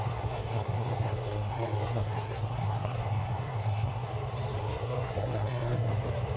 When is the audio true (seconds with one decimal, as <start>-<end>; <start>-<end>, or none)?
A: 4.1-4.6; 5.9-6.4